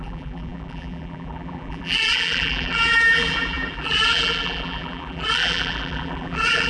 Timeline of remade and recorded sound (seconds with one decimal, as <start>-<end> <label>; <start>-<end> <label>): 0.0-6.7 remade